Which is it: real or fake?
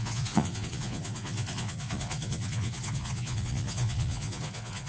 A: fake